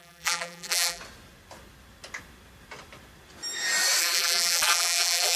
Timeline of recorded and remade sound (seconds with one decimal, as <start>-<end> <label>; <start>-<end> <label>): 0.0-1.0 remade; 1.0-4.0 recorded; 4.0-5.4 remade